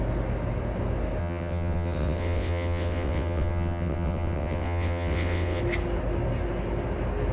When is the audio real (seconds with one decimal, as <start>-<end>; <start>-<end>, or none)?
0.0-1.2; 5.6-7.3